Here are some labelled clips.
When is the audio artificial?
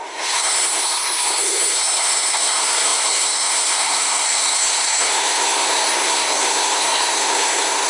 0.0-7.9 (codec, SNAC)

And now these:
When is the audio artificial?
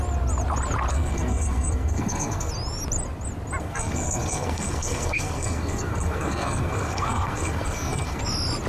0.9-2.5 (codec, SNAC); 3.6-8.2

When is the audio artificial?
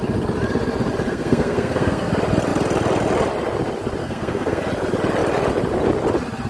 1.1-2.1 (codec, SNAC); 4.0-4.6